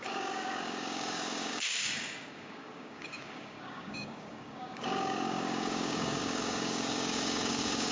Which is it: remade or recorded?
remade